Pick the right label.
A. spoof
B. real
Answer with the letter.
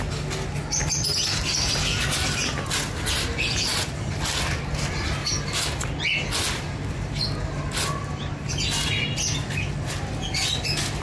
B